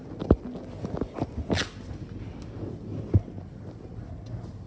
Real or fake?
real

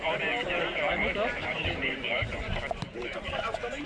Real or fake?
fake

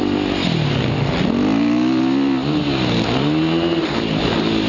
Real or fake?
real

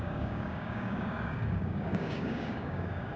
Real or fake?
fake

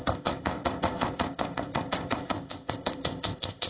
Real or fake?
fake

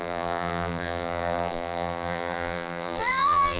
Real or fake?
fake